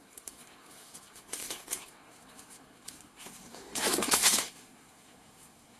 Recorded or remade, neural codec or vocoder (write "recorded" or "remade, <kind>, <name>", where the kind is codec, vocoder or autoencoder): remade, codec, SNAC